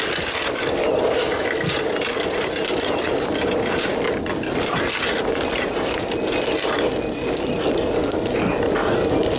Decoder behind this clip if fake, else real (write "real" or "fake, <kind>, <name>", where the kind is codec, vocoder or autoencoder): real